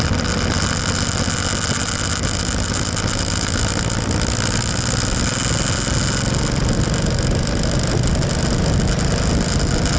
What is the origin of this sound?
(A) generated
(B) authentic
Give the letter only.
B